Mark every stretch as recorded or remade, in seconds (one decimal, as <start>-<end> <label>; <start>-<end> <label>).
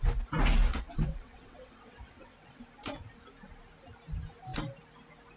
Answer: 0.0-0.7 recorded; 0.7-2.6 remade; 2.6-5.4 recorded